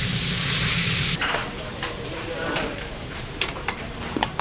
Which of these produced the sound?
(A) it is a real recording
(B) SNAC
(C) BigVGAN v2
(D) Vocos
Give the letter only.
C